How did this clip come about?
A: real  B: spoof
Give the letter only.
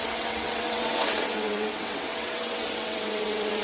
B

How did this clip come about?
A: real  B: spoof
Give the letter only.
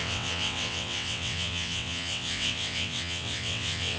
B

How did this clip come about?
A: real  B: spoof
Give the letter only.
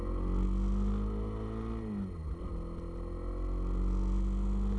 A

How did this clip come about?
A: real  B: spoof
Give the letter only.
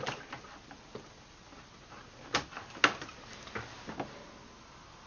A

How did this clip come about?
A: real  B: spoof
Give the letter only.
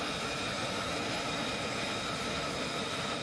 A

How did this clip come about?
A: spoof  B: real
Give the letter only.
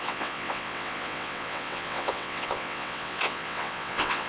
A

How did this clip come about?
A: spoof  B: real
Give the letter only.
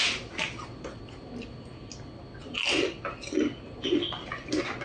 B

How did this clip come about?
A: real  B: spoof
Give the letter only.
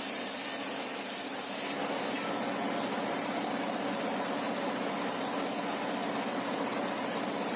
A